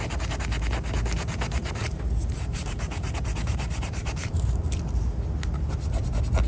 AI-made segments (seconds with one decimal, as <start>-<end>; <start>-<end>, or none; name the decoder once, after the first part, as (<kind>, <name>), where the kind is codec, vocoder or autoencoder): 1.6-4.6 (vocoder, BigVGAN v2)